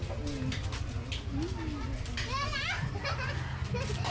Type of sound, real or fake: real